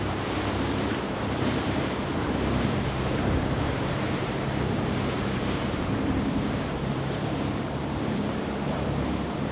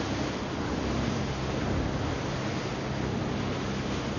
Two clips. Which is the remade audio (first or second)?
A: first